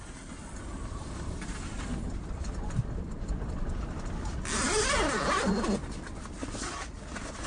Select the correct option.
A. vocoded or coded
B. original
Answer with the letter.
B